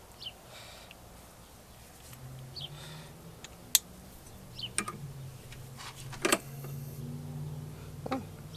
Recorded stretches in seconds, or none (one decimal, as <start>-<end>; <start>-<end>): 0.0-6.3; 7.0-8.6